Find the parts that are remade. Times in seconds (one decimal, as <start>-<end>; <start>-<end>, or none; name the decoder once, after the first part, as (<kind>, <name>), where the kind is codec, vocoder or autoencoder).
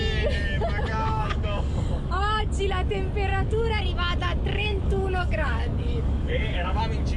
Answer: 0.9-2.5 (codec, DAC); 3.3-3.8; 4.5-6.8